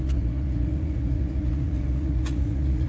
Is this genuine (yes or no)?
no